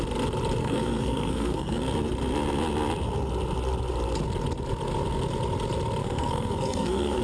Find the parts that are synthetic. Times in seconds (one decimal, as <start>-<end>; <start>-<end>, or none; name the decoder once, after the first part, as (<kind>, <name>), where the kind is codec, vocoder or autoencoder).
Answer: 0.6-1.8 (codec, SNAC); 6.0-7.2